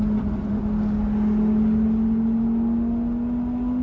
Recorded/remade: recorded